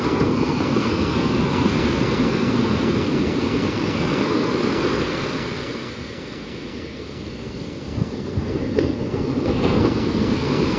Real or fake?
fake